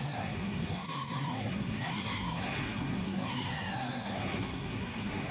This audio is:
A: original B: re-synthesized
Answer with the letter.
B